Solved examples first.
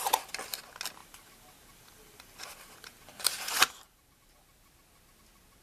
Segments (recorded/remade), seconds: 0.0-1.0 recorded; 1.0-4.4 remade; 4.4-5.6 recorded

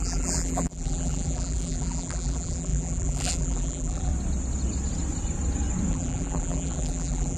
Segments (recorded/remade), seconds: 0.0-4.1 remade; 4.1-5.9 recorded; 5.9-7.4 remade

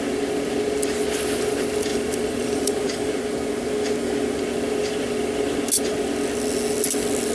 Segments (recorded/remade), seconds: 0.0-1.9 recorded; 1.9-3.1 remade; 3.1-7.3 recorded